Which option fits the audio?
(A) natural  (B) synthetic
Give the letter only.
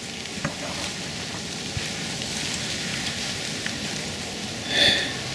A